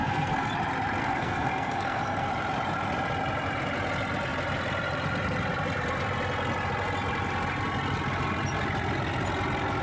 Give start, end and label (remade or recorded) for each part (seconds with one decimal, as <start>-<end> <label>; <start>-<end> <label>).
0.0-0.5 remade; 0.5-1.0 recorded; 1.0-2.3 remade; 2.3-9.8 recorded